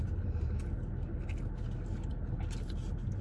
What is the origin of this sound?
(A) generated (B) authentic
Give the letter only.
B